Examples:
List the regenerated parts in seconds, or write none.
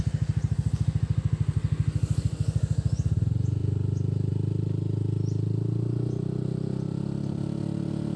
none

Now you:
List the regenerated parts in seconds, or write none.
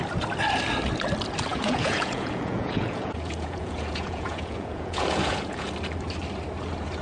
1.5-5.7 (vocoder, Vocos)